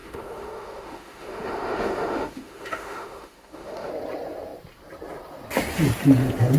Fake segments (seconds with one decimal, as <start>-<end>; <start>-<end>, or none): 0.0-3.9